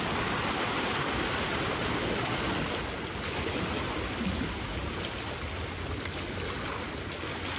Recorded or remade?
recorded